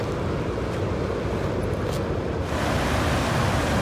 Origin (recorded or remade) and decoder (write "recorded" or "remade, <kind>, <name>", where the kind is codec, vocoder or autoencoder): recorded